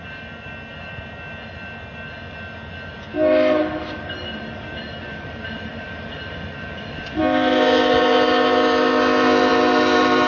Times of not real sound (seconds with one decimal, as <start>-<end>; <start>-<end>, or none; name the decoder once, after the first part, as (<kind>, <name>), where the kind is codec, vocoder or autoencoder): 3.1-7.2 (vocoder, BigVGAN v2)